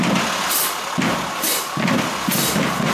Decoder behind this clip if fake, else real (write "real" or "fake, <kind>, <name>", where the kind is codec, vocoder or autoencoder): real